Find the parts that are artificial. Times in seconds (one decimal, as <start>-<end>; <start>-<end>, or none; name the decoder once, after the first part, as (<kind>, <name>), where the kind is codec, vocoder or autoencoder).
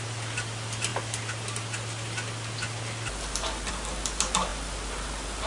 none